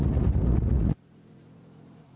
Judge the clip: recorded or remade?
remade